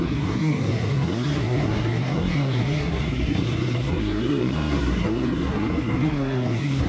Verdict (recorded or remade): remade